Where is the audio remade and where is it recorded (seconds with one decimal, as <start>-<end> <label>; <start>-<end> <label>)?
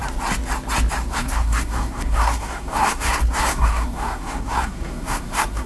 0.0-1.1 recorded; 1.1-5.7 remade